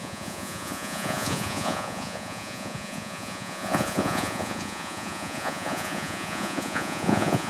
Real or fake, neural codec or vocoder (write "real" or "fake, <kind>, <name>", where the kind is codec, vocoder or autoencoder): fake, vocoder, Vocos